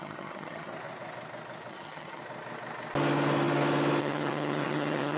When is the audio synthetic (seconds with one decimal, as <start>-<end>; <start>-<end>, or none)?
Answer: 0.0-0.7; 1.7-2.2; 4.0-5.2